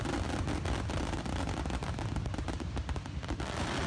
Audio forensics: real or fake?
real